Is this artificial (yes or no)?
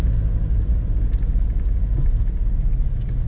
no